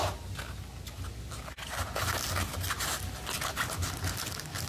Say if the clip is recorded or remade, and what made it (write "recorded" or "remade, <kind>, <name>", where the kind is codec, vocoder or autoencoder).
recorded